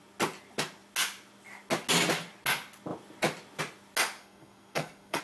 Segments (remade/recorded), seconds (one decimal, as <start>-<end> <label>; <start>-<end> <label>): 0.0-4.2 recorded; 4.2-5.2 remade